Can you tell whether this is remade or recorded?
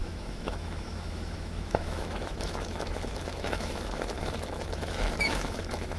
remade